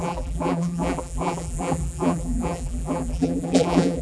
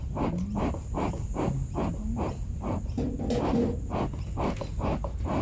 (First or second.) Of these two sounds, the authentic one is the second